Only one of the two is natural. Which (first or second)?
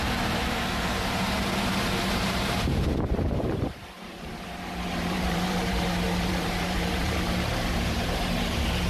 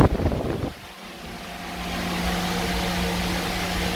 second